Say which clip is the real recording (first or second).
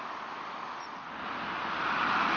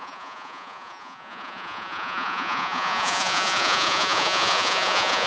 first